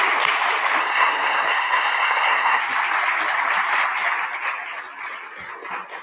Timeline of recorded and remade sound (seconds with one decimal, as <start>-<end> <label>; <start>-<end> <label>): 0.0-0.8 recorded; 0.8-2.6 remade; 2.6-6.0 recorded